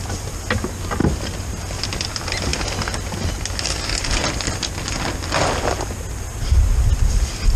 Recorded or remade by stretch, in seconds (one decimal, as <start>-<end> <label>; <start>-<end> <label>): 0.0-1.0 recorded; 1.0-1.8 remade; 1.8-7.6 recorded